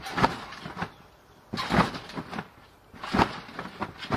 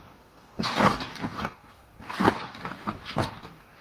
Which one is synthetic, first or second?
second